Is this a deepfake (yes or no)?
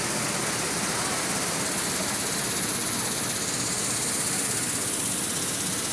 no